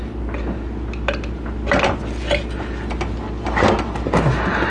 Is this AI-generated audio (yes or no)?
no